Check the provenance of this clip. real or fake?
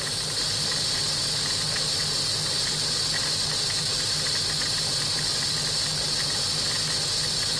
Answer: real